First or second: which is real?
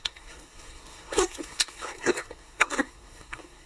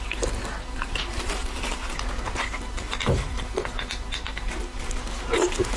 second